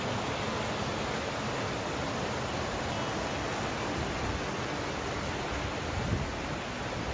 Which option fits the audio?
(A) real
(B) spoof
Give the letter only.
A